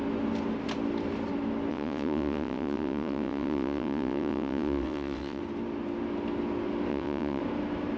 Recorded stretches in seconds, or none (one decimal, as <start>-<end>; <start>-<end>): 0.0-1.7; 5.4-6.9; 7.4-8.0